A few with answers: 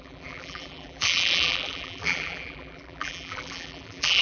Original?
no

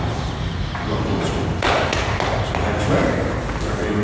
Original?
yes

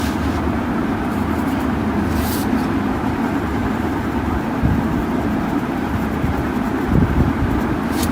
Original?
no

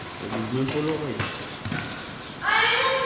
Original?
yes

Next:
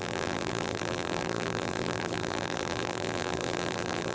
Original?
no